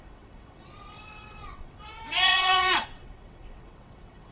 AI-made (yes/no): yes